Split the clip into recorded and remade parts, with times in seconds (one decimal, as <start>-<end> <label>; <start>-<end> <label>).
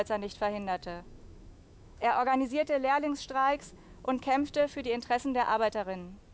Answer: 0.0-0.8 recorded; 0.8-4.6 remade; 4.6-6.3 recorded